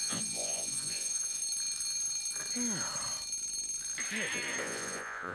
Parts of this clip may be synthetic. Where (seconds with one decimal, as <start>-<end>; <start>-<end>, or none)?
0.0-1.4; 4.6-5.3